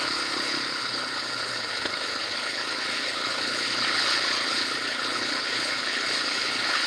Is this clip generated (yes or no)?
yes